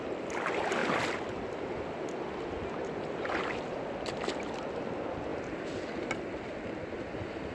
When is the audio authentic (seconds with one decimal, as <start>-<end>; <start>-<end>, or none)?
0.0-7.5